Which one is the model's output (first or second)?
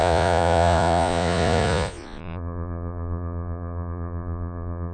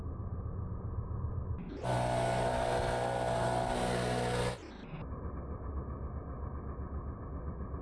first